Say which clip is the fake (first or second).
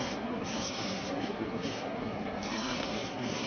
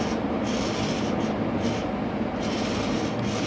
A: first